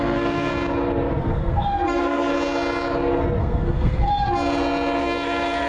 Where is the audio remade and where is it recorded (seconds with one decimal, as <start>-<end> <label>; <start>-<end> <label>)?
0.0-0.5 remade; 0.5-1.2 recorded; 1.2-2.3 remade; 2.3-3.4 recorded; 3.4-4.1 remade; 4.1-5.0 recorded; 5.0-5.7 remade